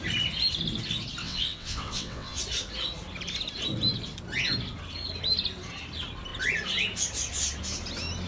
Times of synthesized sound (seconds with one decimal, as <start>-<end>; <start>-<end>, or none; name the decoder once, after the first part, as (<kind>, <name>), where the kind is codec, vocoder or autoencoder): 1.2-2.4 (vocoder, WaveNeXt)